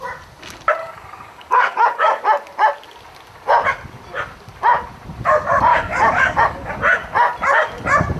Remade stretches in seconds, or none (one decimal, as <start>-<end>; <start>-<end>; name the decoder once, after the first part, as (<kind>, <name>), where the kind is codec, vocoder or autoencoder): 0.8-2.2 (codec, DAC); 5.7-6.7